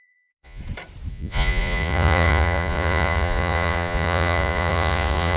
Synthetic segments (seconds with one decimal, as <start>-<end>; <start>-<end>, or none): 0.0-0.6; 1.1-5.4